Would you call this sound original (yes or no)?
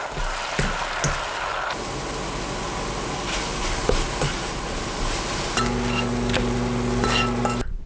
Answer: yes